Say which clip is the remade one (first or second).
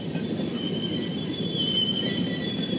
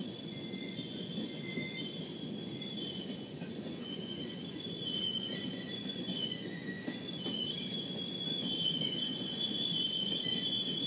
second